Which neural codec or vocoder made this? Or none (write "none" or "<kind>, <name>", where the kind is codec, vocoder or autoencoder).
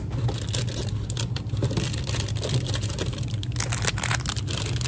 none